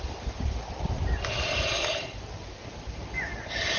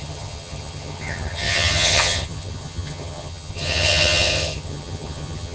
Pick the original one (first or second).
first